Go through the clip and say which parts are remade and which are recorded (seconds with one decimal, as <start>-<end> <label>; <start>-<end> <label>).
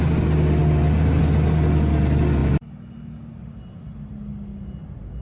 0.0-5.2 recorded